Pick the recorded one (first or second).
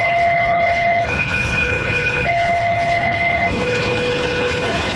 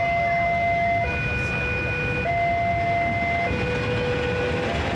second